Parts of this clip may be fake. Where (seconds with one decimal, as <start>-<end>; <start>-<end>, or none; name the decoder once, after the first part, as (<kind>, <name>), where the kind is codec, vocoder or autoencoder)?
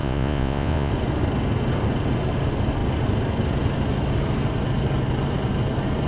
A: 0.0-0.9 (vocoder, Vocos)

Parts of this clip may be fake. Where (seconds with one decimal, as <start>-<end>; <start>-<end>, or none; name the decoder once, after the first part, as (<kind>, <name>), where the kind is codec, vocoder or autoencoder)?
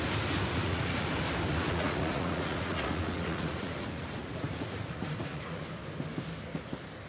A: 0.5-1.1 (vocoder, Vocos); 1.5-5.6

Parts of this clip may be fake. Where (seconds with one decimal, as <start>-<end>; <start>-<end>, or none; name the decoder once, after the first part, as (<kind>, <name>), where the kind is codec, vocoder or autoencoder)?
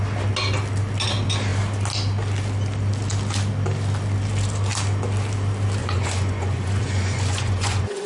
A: 5.8-8.1 (vocoder, Vocos)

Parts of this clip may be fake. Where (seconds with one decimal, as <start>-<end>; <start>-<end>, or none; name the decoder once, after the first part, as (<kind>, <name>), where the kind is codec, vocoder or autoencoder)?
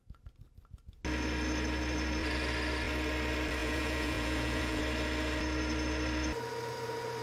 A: 3.6-4.8 (vocoder, Vocos)